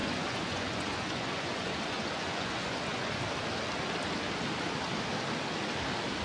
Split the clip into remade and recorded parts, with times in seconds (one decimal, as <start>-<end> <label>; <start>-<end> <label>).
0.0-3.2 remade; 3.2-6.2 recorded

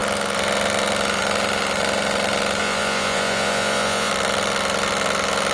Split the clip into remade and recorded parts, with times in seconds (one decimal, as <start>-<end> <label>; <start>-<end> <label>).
0.0-2.6 recorded; 2.6-4.1 remade; 4.1-5.5 recorded

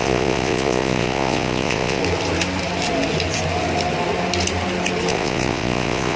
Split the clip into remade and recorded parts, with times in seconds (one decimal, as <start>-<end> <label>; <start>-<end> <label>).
0.0-2.0 remade; 2.0-5.1 recorded; 5.1-6.2 remade

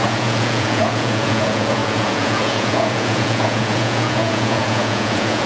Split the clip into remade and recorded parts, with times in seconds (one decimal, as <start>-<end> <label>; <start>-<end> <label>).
0.0-5.5 remade

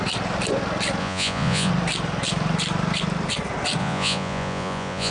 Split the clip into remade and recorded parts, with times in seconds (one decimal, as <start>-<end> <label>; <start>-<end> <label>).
0.0-1.0 recorded; 1.0-1.7 remade; 1.7-3.8 recorded; 3.8-5.1 remade

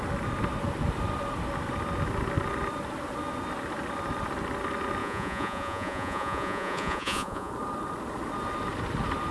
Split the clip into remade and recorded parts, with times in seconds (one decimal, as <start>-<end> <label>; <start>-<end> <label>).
0.0-5.0 recorded; 5.0-7.5 remade; 7.5-9.3 recorded

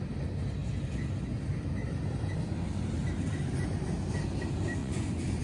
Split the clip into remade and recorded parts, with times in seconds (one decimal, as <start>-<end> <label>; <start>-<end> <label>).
0.0-4.8 recorded; 4.8-5.4 remade